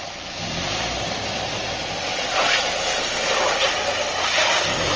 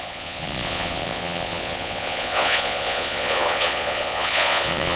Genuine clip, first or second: first